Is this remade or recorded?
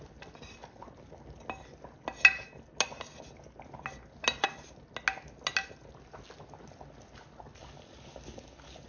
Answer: recorded